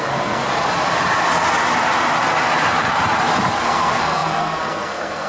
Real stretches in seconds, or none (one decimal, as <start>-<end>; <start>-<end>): 0.4-3.6